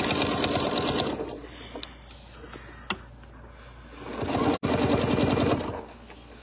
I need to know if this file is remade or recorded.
recorded